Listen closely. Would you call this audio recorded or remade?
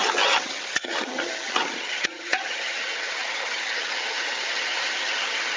remade